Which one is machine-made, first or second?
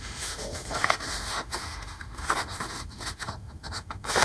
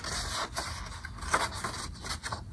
first